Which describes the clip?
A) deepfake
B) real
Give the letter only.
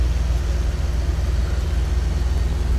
B